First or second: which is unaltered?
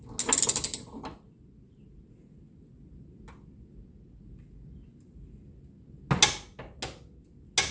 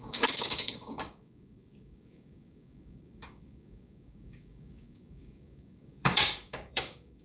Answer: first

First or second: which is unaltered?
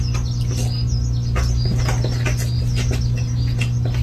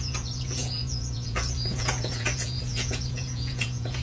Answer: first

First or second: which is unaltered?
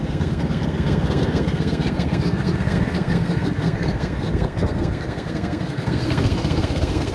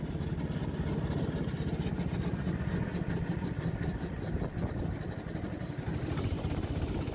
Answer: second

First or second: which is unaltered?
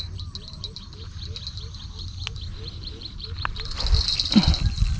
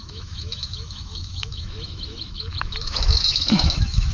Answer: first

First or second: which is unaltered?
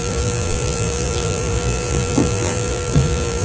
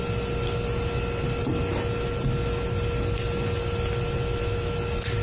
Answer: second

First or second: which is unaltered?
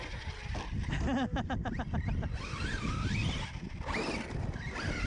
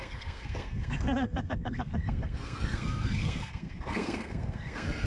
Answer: first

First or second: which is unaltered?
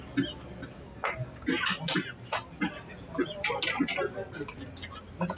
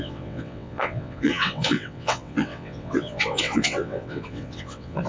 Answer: first